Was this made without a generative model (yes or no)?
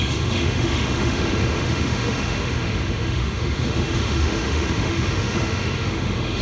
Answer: no